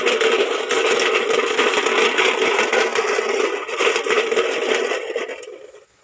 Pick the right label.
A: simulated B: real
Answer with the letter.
B